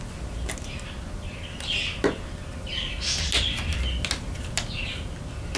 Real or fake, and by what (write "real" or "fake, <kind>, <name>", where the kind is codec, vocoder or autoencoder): real